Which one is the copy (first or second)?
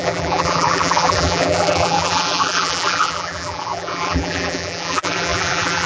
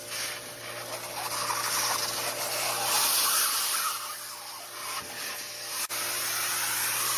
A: first